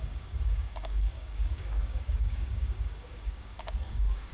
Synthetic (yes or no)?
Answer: yes